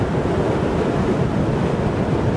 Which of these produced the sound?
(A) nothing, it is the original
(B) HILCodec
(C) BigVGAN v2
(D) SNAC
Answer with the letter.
A